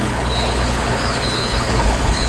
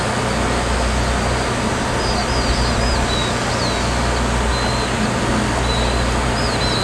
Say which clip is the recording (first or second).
second